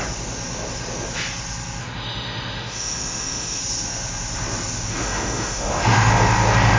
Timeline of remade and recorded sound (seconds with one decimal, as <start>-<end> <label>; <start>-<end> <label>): 0.0-1.8 recorded; 1.8-3.6 remade; 3.6-4.9 recorded; 4.9-6.1 remade; 6.1-6.8 recorded